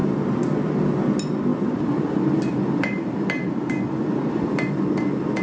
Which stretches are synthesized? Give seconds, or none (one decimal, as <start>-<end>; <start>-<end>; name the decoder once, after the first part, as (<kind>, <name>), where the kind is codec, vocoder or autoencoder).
1.5-4.7 (vocoder, BigVGAN v2)